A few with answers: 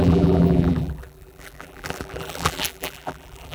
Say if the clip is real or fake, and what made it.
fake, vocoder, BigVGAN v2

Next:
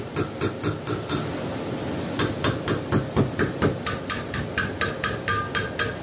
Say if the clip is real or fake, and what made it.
real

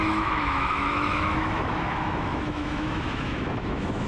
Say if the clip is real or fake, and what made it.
fake, autoencoder, DAC-VAE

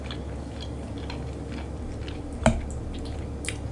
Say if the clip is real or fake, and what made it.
real